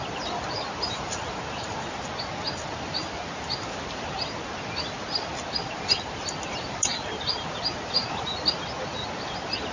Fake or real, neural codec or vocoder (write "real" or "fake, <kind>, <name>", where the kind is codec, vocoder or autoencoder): real